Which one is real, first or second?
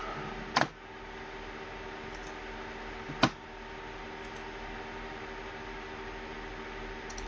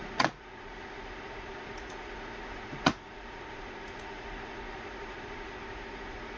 first